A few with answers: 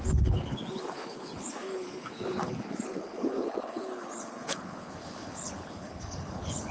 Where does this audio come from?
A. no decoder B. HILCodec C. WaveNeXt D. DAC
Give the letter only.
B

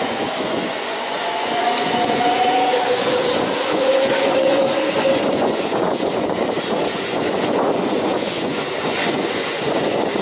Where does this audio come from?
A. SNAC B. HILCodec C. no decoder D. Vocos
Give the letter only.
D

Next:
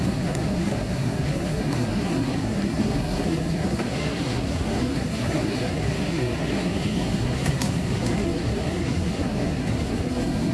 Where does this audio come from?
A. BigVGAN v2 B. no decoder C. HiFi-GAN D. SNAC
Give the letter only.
D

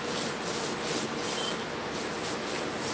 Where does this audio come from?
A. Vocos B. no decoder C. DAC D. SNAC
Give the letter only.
B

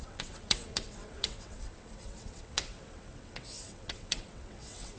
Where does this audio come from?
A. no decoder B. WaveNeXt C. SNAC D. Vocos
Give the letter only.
B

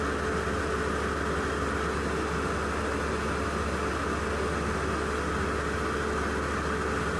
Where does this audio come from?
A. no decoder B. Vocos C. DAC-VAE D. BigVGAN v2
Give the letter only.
A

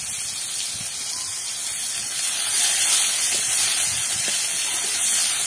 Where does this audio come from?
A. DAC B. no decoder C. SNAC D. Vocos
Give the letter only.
B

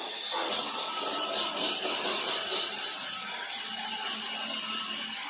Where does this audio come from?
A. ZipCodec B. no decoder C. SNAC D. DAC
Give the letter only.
B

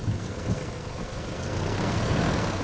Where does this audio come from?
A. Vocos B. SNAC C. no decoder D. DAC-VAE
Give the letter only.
B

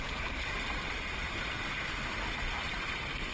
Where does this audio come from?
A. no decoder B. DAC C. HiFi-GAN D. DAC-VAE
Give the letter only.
A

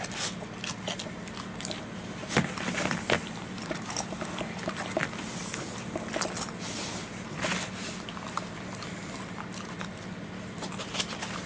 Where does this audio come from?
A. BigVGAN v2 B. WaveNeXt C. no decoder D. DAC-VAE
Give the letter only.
C